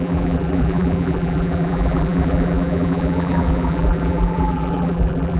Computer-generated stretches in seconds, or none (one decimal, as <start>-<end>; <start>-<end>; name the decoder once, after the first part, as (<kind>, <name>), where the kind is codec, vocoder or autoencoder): 0.0-5.4 (vocoder, BigVGAN v2)